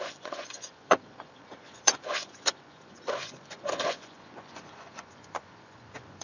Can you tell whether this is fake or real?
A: fake